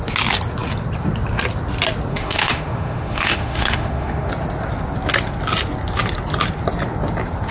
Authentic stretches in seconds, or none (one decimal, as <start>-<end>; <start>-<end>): 0.0-2.1; 4.3-7.5